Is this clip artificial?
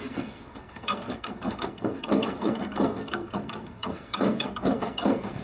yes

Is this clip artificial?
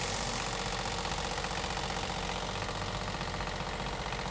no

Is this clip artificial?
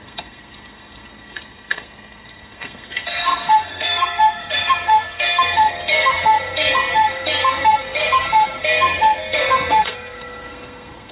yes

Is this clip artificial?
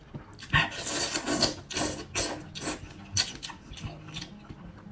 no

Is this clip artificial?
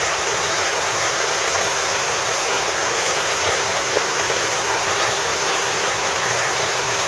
yes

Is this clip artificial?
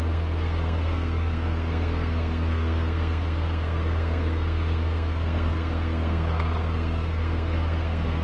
yes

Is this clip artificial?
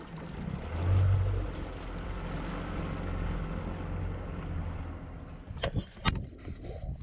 no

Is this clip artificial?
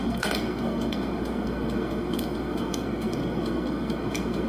yes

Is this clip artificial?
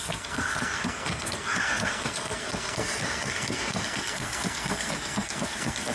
yes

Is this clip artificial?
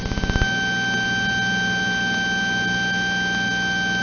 no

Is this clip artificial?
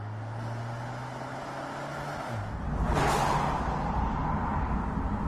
no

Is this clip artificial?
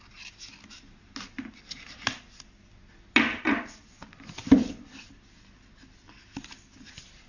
no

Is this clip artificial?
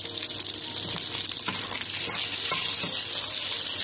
no